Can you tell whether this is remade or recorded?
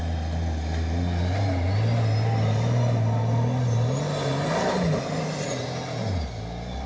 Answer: recorded